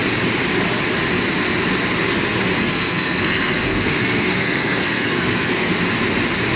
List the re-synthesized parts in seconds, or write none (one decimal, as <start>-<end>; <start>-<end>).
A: 2.6-5.7